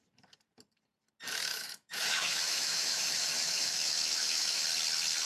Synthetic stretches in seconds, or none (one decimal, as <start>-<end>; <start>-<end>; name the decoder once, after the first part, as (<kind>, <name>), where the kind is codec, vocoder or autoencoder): 1.5-4.6 (autoencoder, DAC-VAE)